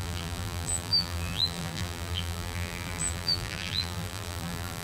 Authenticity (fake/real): fake